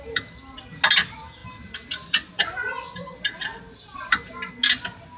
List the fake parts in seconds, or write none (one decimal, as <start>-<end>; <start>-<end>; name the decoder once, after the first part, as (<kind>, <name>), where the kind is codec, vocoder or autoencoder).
none